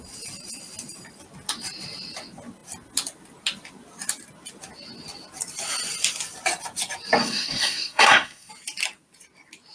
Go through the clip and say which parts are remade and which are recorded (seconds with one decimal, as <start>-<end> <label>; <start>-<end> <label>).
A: 0.0-7.2 recorded; 7.2-8.5 remade; 8.5-9.7 recorded